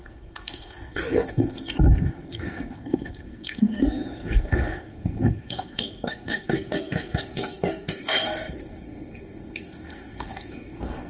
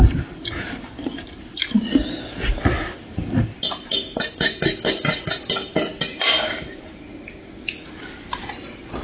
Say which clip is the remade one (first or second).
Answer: first